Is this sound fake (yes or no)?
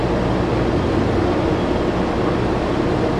no